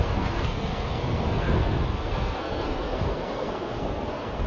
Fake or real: fake